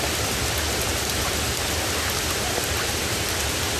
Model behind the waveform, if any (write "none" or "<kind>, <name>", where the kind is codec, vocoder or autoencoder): none